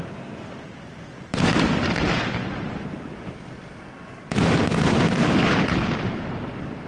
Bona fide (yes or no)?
no